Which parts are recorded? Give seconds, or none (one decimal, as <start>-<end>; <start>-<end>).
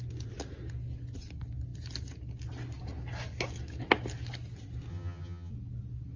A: 0.0-4.9; 5.5-6.2